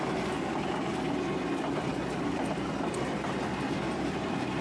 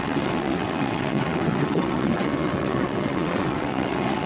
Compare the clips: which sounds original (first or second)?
first